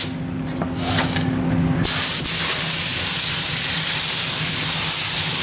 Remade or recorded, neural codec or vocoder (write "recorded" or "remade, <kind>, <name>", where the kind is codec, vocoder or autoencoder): recorded